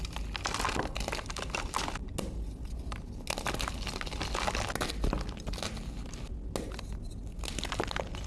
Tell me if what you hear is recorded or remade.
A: recorded